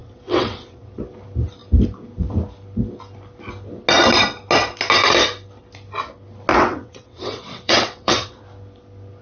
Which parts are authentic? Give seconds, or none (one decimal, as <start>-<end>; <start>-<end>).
1.0-6.5; 8.4-9.2